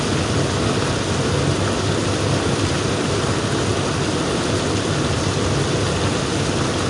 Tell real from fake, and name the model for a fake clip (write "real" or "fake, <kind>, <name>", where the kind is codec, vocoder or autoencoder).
real